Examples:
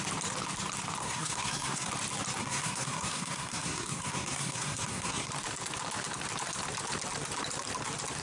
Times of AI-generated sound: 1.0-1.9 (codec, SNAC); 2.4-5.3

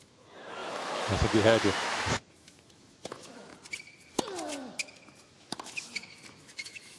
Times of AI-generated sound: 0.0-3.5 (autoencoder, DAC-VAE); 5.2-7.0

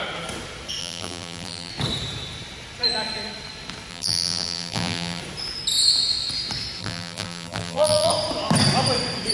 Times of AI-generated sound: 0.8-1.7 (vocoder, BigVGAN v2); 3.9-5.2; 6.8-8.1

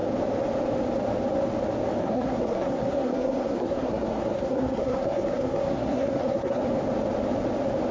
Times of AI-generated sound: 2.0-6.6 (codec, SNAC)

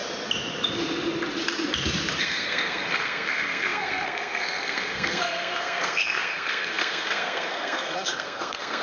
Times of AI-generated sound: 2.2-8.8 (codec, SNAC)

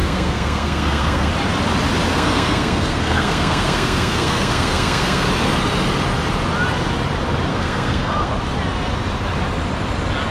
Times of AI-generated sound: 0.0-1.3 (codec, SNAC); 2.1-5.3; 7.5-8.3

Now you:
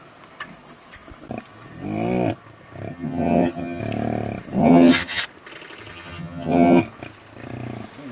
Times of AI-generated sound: 2.9-3.8 (vocoder, HiFi-GAN); 4.6-5.2; 5.9-6.8

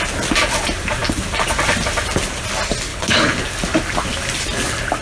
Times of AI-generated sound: 2.9-3.4 (codec, HILCodec)